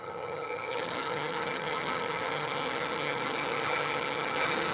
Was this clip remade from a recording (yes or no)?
yes